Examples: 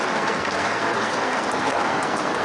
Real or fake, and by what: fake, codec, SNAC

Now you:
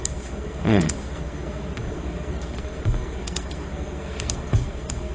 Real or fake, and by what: fake, codec, SNAC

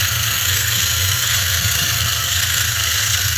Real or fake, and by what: fake, codec, SNAC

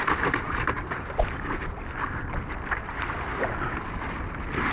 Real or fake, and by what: real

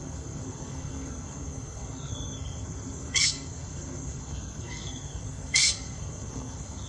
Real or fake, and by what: fake, codec, SNAC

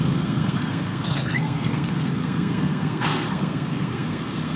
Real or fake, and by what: fake, codec, SNAC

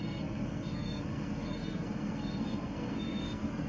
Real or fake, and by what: fake, codec, SNAC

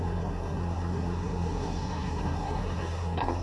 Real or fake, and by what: fake, codec, SNAC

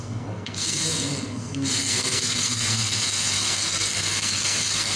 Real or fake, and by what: fake, codec, SNAC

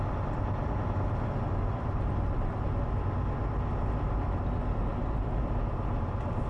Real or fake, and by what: real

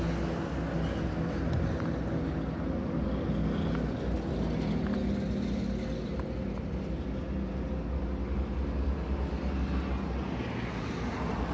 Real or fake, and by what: real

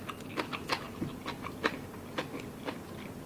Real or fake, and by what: real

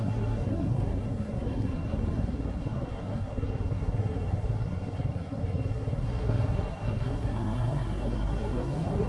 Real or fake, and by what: fake, codec, SNAC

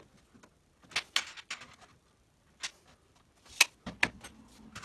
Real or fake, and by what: real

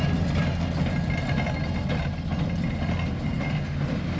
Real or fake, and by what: real